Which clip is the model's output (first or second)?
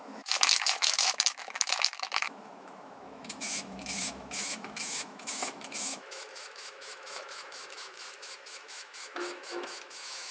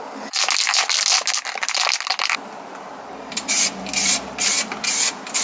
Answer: first